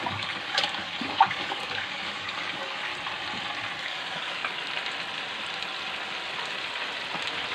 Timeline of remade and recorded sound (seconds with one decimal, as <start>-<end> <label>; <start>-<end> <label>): 0.0-2.9 remade; 2.9-3.8 recorded; 3.8-4.4 remade; 4.4-7.5 recorded